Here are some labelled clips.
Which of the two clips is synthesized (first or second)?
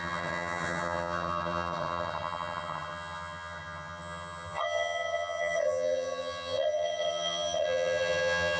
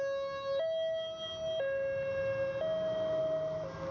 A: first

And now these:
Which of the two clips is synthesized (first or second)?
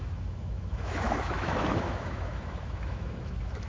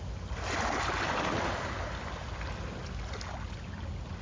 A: first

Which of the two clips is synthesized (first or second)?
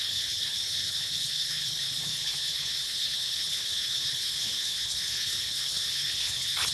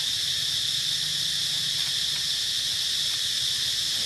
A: first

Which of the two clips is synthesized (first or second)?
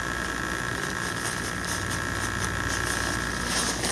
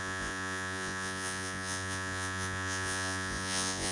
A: second